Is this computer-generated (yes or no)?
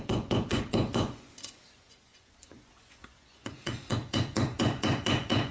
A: yes